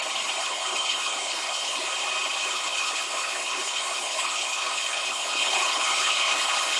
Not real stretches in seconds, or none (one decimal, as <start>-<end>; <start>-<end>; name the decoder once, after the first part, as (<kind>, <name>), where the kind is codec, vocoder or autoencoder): 0.4-1.9 (codec, HILCodec); 2.4-6.8